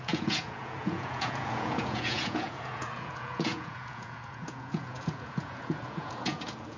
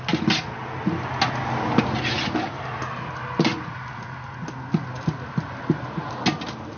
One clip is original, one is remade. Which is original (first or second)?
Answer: second